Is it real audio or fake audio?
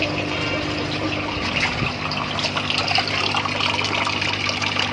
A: real